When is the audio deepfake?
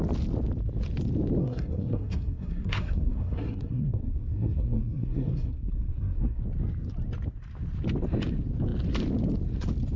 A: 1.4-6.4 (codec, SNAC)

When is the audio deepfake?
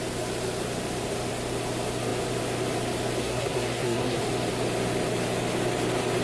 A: 3.2-4.2 (codec, SNAC)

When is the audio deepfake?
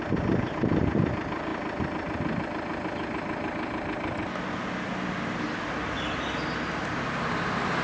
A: none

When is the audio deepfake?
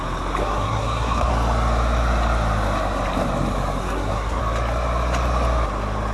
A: 0.4-1.3 (codec, SNAC); 3.8-4.4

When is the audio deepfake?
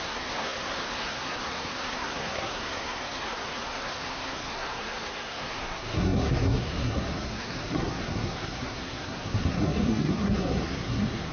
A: 0.0-11.3 (codec, SNAC)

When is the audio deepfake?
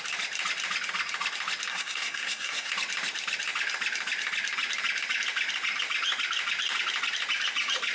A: 1.7-2.7 (codec, SNAC)